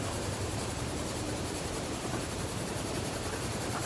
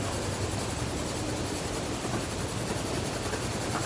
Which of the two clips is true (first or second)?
second